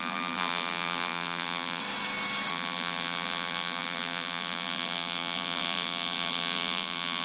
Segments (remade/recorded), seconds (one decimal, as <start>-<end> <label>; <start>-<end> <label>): 0.0-1.8 remade; 1.8-2.5 recorded; 2.5-7.2 remade